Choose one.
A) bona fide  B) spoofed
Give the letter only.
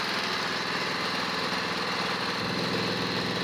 A